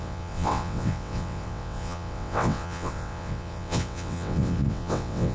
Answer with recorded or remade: remade